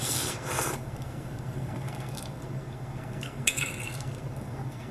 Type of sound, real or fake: fake